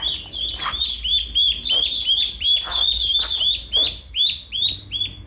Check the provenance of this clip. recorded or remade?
recorded